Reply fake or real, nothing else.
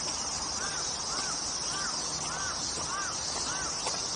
real